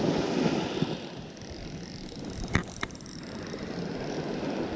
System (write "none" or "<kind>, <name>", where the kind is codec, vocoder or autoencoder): none